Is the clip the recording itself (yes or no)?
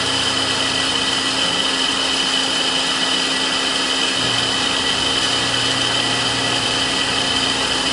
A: yes